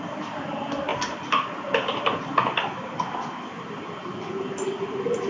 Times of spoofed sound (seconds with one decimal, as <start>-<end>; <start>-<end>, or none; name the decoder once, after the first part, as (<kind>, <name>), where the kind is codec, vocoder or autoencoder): none